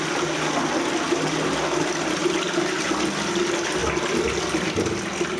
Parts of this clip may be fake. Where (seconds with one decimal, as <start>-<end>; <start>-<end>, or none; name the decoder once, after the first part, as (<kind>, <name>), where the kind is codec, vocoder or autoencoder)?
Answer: none